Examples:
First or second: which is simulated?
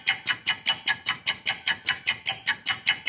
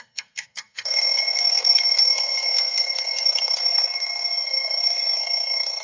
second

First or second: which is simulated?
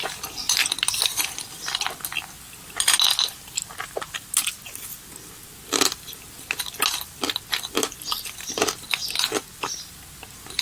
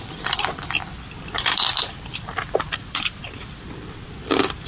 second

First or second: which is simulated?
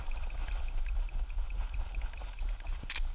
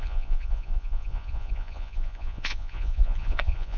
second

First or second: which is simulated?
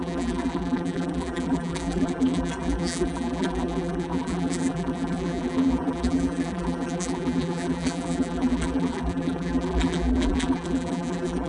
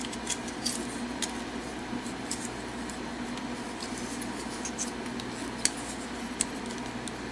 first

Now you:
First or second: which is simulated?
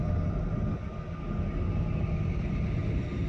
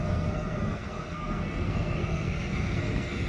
second